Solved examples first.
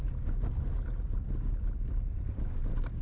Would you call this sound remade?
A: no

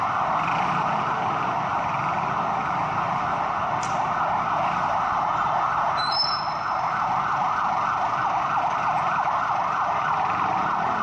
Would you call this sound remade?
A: no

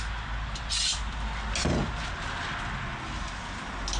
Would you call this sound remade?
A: no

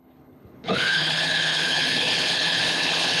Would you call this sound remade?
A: yes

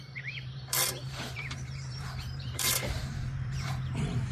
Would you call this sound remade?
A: yes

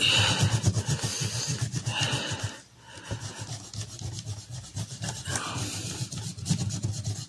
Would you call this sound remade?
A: no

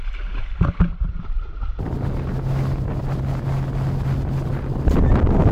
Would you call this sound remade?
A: no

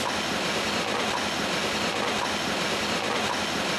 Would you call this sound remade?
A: no